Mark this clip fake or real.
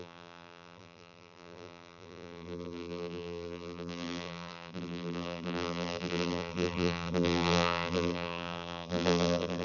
fake